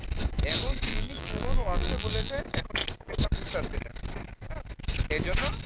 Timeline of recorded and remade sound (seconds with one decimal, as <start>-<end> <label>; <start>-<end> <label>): 0.0-0.9 recorded; 0.9-2.3 remade; 2.3-5.7 recorded